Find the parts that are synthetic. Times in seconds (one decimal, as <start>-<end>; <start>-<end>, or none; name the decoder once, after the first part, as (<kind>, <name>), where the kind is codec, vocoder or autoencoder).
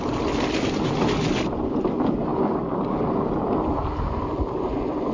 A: none